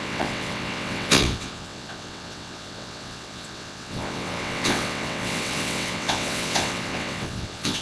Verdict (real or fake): fake